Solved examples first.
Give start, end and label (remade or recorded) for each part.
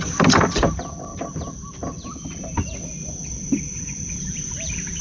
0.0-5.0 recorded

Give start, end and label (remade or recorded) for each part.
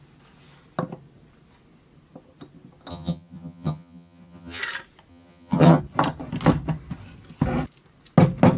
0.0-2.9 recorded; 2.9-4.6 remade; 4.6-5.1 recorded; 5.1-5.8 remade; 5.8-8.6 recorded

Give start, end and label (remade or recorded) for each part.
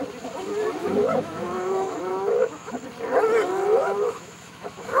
0.0-0.8 recorded; 0.8-2.7 remade; 2.7-3.8 recorded; 3.8-5.0 remade